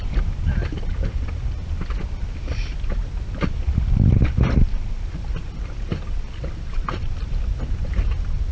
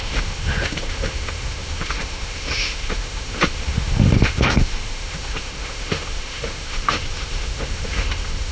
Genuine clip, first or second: first